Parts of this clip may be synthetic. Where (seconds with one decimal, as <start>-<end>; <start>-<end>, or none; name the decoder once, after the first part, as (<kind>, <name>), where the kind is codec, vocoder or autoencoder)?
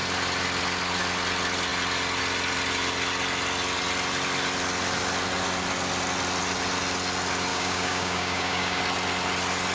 7.5-8.8 (codec, DAC)